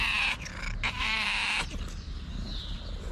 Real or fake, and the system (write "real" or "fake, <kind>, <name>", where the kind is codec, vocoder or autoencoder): real